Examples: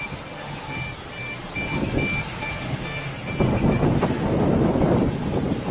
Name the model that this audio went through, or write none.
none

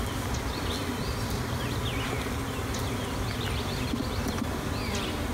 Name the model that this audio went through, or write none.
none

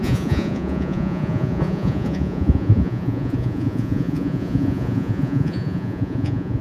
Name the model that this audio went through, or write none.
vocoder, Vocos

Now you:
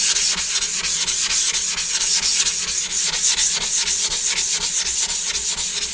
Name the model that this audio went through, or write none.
none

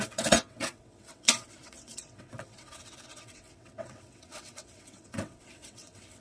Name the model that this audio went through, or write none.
vocoder, WaveNeXt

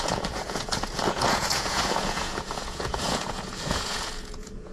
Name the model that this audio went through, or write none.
vocoder, Vocos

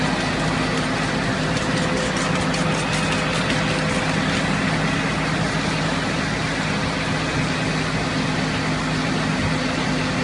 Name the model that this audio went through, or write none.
none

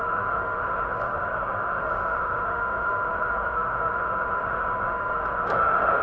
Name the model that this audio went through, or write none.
autoencoder, DAC-VAE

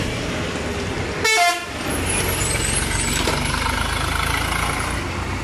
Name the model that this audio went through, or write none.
none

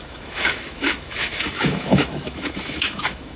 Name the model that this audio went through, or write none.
autoencoder, DAC-VAE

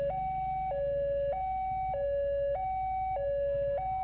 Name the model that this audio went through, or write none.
none